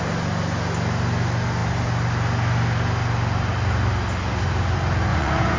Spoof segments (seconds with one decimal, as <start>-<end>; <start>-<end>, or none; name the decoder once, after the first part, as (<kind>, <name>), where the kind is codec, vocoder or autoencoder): 5.1-5.6 (vocoder, Vocos)